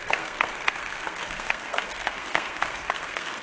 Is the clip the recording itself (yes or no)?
no